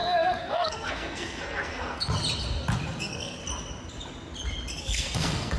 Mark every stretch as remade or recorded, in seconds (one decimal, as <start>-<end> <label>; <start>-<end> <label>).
0.0-2.1 remade; 2.1-3.0 recorded; 3.0-3.4 remade; 3.4-4.8 recorded; 4.8-5.6 remade